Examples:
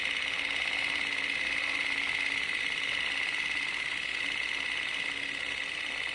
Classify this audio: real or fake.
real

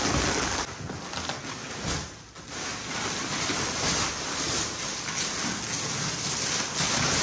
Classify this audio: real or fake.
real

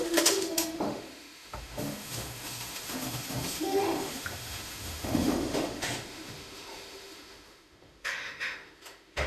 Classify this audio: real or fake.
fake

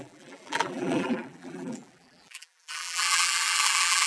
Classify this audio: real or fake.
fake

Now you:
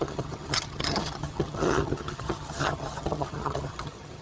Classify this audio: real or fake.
fake